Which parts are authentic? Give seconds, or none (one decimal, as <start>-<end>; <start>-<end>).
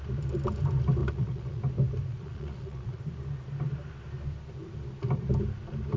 0.0-1.0; 1.6-2.1; 3.0-6.0